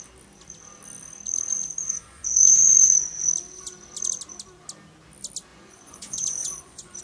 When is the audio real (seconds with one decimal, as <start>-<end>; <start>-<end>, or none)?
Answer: 0.0-1.8; 3.3-5.5